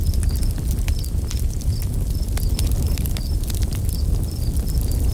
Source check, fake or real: real